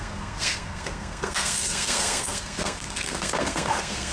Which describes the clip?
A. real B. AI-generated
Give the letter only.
B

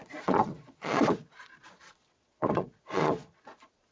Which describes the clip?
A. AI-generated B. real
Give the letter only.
A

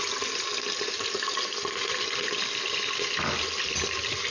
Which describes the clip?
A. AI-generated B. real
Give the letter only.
B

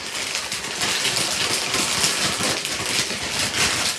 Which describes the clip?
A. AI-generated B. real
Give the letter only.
B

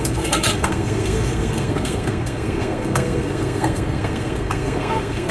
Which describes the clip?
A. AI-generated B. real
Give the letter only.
A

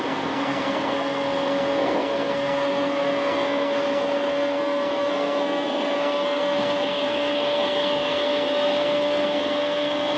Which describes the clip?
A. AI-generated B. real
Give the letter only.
A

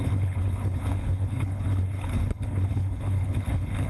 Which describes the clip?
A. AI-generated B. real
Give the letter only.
A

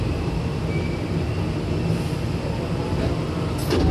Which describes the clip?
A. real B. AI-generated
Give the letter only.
A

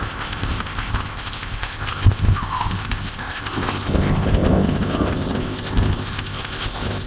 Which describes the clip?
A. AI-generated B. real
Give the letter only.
A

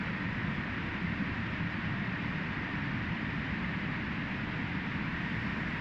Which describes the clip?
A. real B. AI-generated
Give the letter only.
B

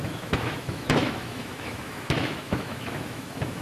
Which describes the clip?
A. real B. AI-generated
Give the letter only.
B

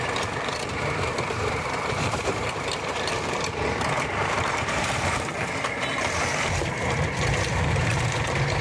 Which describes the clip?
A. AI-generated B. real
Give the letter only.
A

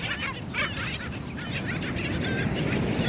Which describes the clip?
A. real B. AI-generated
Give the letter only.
A